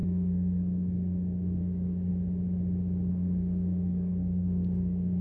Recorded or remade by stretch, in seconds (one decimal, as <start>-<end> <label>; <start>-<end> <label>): 0.0-2.1 remade; 2.1-3.1 recorded; 3.1-5.2 remade